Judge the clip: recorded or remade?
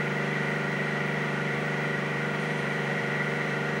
remade